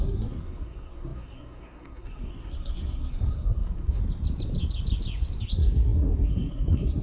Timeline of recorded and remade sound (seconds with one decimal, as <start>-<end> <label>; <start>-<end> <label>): 0.0-4.0 remade; 4.0-5.5 recorded; 5.5-7.0 remade